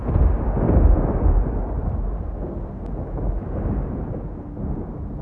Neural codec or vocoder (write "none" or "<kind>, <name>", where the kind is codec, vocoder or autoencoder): none